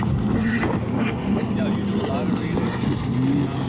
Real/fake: real